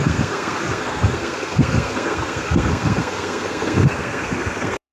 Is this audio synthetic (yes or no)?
yes